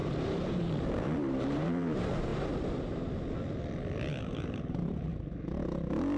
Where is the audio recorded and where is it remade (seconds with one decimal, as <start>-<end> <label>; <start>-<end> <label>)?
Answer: 0.0-2.3 remade; 2.3-4.2 recorded; 4.2-5.1 remade; 5.1-6.2 recorded